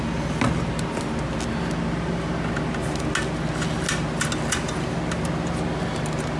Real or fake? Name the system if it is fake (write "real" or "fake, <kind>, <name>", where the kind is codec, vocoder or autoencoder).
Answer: real